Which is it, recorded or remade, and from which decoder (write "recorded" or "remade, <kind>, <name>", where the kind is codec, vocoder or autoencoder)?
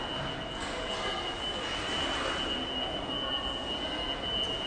recorded